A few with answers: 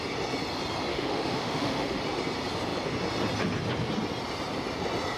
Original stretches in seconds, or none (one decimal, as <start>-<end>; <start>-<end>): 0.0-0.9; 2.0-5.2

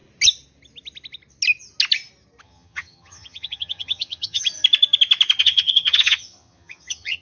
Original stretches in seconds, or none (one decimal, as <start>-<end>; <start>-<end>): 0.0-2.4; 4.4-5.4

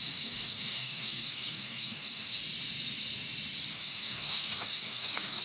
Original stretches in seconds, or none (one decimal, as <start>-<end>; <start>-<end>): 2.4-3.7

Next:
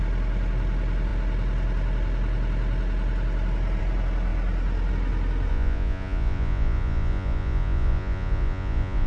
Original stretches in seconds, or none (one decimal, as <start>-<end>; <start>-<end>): 0.0-5.5

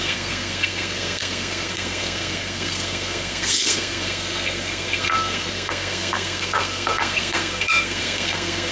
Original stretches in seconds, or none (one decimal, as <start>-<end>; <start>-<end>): none

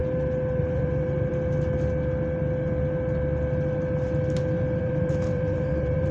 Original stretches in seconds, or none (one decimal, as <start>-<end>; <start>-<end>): 0.0-0.6; 1.3-4.8

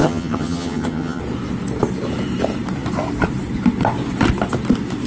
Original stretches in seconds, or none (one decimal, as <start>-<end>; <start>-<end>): 1.2-5.1